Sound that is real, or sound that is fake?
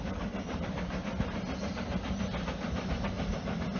real